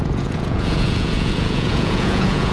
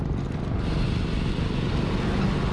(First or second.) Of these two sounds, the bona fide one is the second